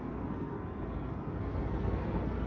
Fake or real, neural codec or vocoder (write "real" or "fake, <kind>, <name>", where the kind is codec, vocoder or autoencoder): fake, codec, SNAC